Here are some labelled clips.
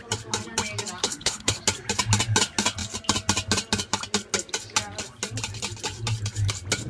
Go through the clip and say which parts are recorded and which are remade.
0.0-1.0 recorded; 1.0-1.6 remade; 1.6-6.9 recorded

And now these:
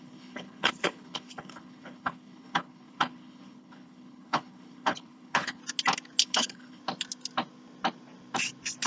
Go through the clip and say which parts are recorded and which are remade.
0.0-5.6 remade; 5.6-6.2 recorded; 6.2-6.8 remade; 6.8-8.9 recorded

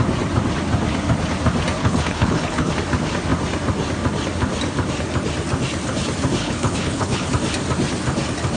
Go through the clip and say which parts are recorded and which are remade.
0.0-1.8 recorded; 1.8-2.7 remade; 2.7-6.4 recorded; 6.4-7.3 remade; 7.3-8.6 recorded

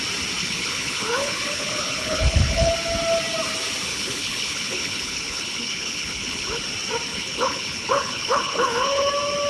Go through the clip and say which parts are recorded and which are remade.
0.0-0.4 recorded; 0.4-2.7 remade; 2.7-3.9 recorded; 3.9-6.6 remade; 6.6-7.1 recorded; 7.1-9.1 remade; 9.1-9.5 recorded